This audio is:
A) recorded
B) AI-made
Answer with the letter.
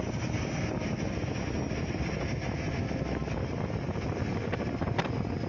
A